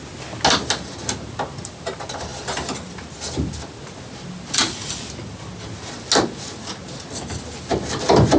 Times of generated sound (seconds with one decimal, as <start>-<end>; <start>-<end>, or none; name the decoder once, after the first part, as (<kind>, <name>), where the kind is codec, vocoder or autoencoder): none